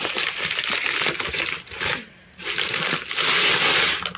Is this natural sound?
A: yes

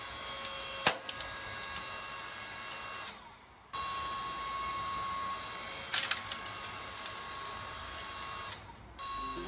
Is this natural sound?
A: yes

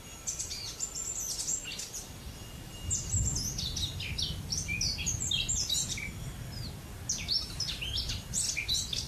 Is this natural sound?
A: yes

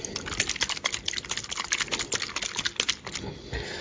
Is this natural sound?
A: yes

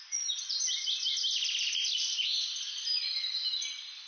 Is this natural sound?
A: no